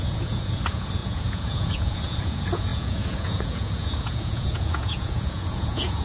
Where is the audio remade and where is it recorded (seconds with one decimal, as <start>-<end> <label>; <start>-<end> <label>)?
0.0-6.0 remade